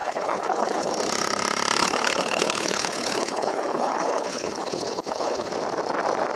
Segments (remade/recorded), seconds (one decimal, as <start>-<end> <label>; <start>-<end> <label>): 0.0-0.9 remade; 0.9-1.8 recorded; 1.8-5.5 remade; 5.5-6.4 recorded